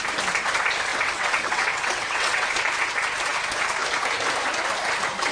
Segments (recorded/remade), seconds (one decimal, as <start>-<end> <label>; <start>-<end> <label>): 0.0-0.9 recorded; 0.9-2.5 remade; 2.5-5.3 recorded